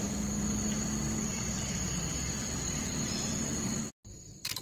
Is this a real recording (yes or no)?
yes